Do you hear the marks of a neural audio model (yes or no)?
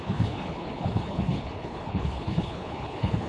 yes